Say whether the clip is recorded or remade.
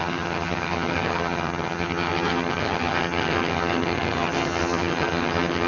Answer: remade